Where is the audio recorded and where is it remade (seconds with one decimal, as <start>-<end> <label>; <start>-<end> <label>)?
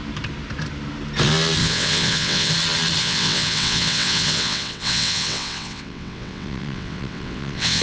0.0-1.6 recorded; 1.6-2.5 remade; 2.5-3.0 recorded; 3.0-7.8 remade